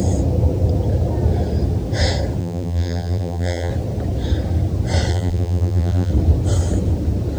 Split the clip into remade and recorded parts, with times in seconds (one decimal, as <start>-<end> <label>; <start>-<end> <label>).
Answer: 0.0-2.4 recorded; 2.4-3.7 remade; 3.7-5.1 recorded; 5.1-6.1 remade; 6.1-7.4 recorded